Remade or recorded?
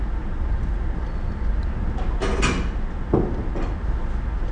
recorded